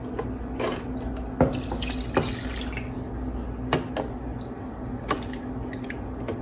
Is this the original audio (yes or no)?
yes